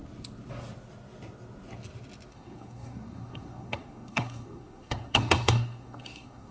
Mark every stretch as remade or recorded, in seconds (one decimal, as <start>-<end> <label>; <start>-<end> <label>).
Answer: 0.0-2.3 recorded; 2.3-6.5 remade